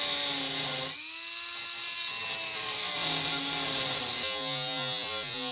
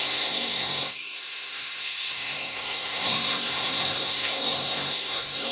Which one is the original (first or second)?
first